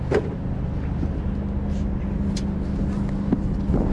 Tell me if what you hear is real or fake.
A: real